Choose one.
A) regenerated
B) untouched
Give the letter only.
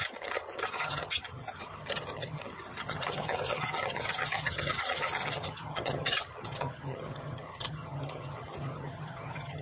A